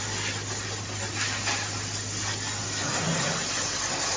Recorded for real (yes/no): yes